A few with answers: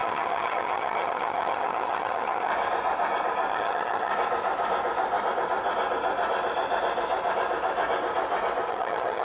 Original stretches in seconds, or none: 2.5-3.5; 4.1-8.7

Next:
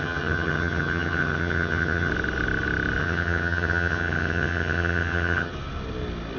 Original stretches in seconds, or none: 2.1-3.0; 5.5-6.4

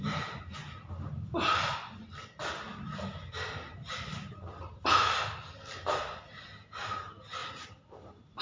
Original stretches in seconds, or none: 0.0-8.4

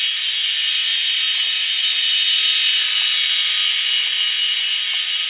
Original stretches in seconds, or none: 0.0-5.3

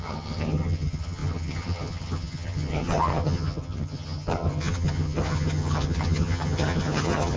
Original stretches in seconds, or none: none

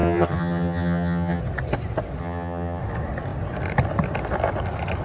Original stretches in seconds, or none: 1.4-2.2; 2.8-5.0

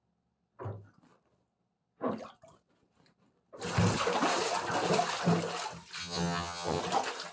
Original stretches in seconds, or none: 0.0-6.0; 6.8-7.3